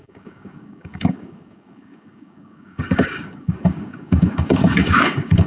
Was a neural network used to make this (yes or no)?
yes